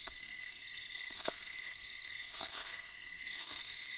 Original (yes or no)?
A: no